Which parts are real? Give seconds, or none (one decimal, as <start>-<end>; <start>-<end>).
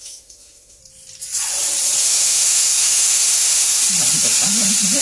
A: 0.8-2.0; 3.8-5.0